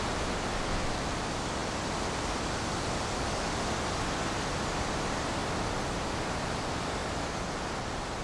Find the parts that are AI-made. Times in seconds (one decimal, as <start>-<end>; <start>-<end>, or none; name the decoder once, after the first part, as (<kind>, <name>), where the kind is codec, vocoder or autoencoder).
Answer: 0.0-1.6 (vocoder, BigVGAN v2); 4.8-5.4; 6.6-7.0